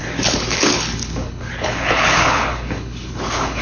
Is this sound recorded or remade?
remade